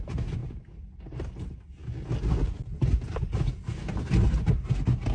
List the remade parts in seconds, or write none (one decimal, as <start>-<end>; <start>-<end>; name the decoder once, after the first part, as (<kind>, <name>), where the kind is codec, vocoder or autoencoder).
none